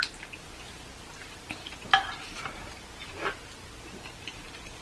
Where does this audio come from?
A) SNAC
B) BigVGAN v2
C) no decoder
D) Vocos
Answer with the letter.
C